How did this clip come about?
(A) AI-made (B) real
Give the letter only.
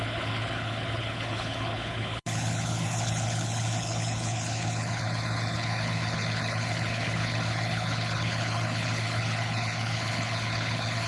A